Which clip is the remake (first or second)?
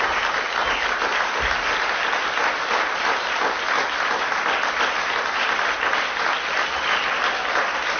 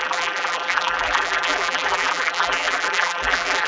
second